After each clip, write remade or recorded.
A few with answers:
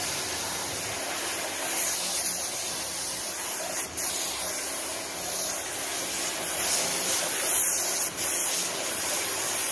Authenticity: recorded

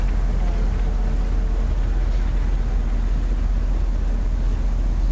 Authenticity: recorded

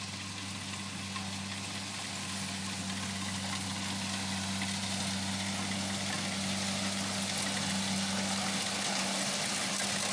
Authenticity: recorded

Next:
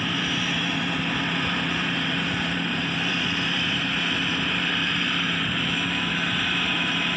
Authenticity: remade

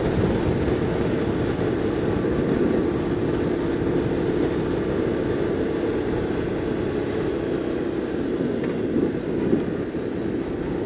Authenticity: recorded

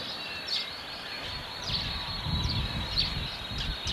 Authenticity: remade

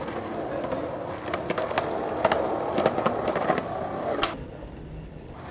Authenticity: recorded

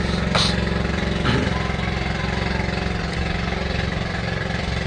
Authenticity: remade